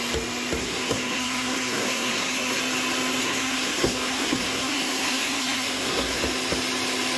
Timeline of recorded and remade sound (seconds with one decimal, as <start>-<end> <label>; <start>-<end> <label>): 0.0-0.6 recorded; 0.6-2.6 remade; 2.6-3.2 recorded; 3.2-6.2 remade; 6.2-7.2 recorded

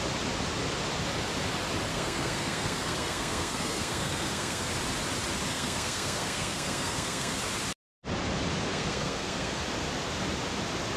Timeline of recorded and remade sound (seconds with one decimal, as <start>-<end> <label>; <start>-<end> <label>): 0.0-1.9 recorded; 1.9-4.7 remade; 4.7-5.5 recorded; 5.5-7.4 remade; 7.4-8.7 recorded; 8.7-9.6 remade; 9.6-11.0 recorded

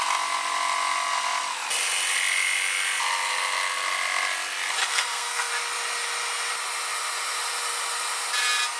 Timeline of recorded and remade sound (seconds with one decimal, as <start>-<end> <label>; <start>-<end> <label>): 0.0-4.8 recorded; 4.8-5.5 remade; 5.5-8.8 recorded

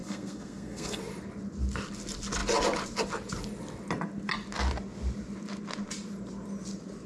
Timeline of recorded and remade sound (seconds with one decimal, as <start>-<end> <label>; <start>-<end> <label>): 0.0-1.0 remade; 1.0-7.1 recorded

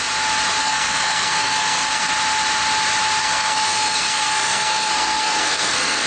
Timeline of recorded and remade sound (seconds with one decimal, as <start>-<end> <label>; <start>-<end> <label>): 0.0-0.6 recorded; 0.6-2.1 remade; 2.1-3.2 recorded; 3.2-6.1 remade

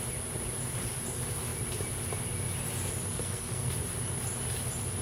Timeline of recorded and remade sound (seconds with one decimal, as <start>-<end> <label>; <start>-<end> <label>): 0.0-3.1 recorded; 3.1-3.7 remade; 3.7-5.0 recorded